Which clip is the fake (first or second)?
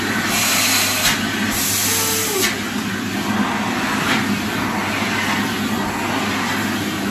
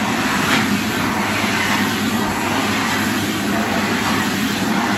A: second